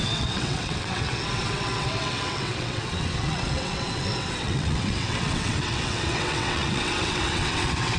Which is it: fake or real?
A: fake